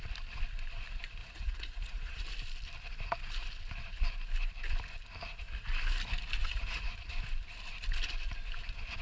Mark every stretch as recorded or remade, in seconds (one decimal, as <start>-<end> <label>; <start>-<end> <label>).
0.0-1.2 recorded; 1.2-2.2 remade; 2.2-6.4 recorded; 6.4-6.9 remade; 6.9-9.0 recorded